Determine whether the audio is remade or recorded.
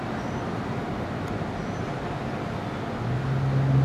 recorded